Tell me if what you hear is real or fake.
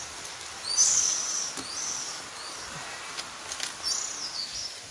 real